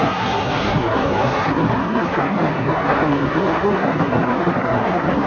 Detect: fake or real fake